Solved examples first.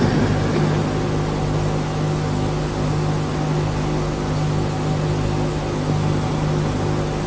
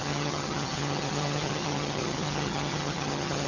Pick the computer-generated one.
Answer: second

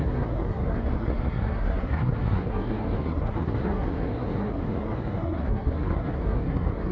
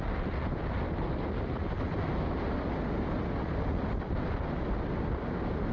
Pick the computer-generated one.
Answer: first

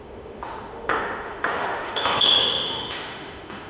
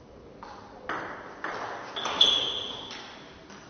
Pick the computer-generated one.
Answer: first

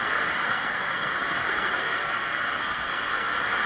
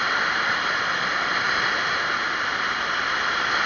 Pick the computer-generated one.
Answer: first